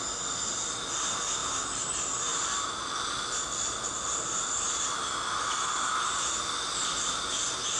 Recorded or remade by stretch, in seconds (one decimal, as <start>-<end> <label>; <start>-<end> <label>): 0.0-1.4 recorded; 1.4-1.9 remade; 1.9-2.3 recorded; 2.3-3.5 remade; 3.5-7.8 recorded